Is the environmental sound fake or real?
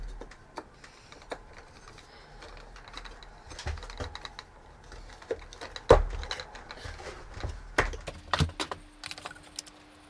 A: real